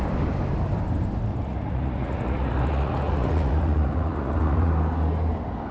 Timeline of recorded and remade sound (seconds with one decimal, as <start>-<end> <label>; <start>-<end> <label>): 0.0-1.3 recorded; 1.3-4.7 remade; 4.7-5.7 recorded